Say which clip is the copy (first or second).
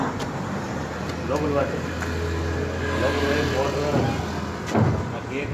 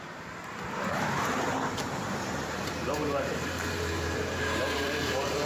second